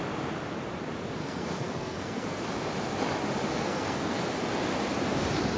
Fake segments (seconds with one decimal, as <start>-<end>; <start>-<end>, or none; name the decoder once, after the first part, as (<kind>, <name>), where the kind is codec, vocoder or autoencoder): 1.2-2.4 (codec, SNAC); 3.5-4.2